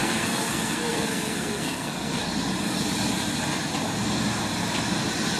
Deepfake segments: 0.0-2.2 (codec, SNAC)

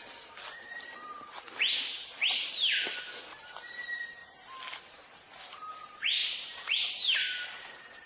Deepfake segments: 0.0-4.2 (vocoder, BigVGAN v2); 4.8-8.1

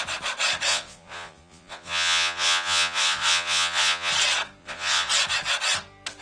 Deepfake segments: 0.7-4.1 (vocoder, Vocos); 4.6-5.1

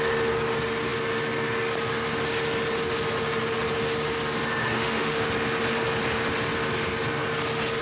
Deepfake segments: 4.6-5.2 (autoencoder, DAC-VAE)